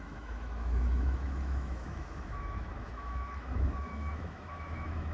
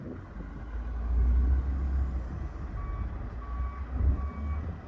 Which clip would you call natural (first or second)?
second